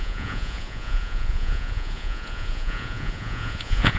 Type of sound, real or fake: fake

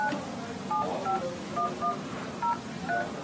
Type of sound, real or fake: real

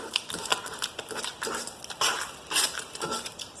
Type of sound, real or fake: real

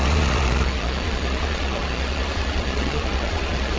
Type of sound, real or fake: fake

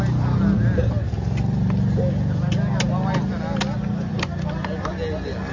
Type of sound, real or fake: real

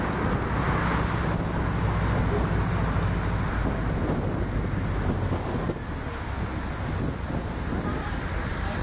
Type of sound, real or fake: real